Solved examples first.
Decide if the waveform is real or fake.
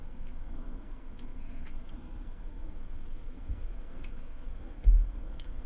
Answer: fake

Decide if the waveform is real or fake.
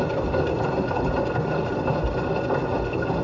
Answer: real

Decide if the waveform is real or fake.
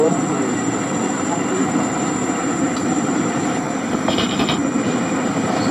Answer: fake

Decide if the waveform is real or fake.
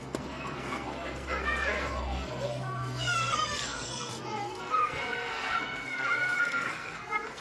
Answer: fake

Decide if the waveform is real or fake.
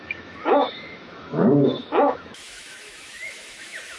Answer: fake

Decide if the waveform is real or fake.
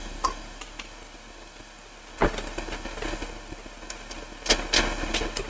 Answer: real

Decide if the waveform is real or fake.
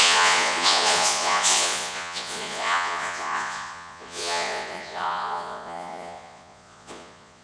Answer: fake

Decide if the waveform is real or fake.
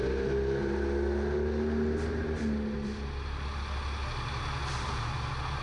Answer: real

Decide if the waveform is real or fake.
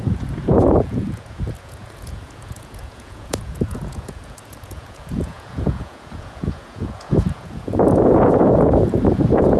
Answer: fake